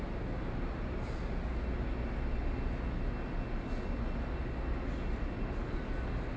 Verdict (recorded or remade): recorded